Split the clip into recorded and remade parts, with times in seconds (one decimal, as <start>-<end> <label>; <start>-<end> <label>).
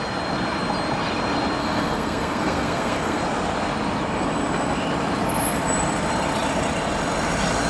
0.0-1.6 recorded; 1.6-3.2 remade; 3.2-7.7 recorded